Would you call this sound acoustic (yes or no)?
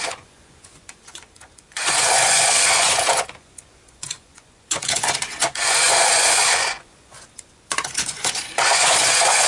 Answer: no